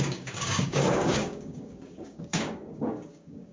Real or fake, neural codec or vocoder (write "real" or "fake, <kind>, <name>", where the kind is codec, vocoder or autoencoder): fake, codec, DAC